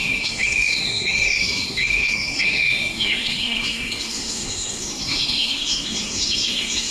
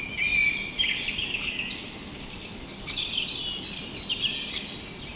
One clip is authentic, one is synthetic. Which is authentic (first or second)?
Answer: second